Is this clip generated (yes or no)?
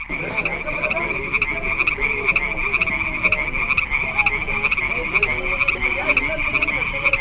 no